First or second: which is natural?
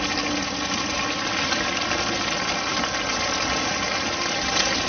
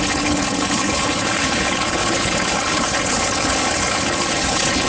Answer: first